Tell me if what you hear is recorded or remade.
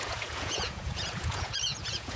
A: remade